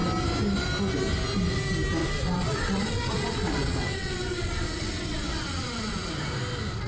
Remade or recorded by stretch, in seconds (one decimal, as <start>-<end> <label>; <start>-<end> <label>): 0.0-2.0 recorded; 2.0-6.1 remade; 6.1-6.9 recorded